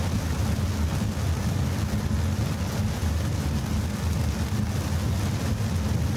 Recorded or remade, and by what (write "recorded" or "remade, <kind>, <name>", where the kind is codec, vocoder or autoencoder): recorded